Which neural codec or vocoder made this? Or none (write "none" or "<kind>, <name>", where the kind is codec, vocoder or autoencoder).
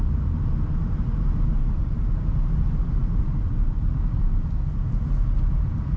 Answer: vocoder, BigVGAN v2